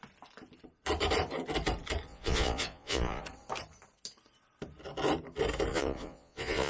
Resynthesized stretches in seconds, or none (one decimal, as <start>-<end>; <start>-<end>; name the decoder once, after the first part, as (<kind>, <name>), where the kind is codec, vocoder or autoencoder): 2.1-3.2 (vocoder, Vocos); 5.7-6.7